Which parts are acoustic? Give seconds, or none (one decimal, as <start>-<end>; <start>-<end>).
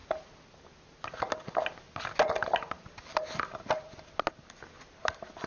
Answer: 0.0-5.5